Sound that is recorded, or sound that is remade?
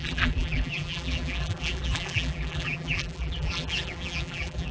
remade